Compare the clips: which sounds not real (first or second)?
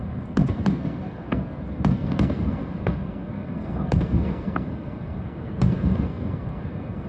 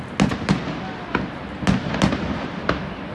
first